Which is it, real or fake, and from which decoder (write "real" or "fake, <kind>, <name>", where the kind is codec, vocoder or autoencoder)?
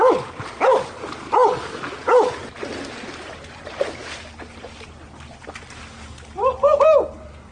real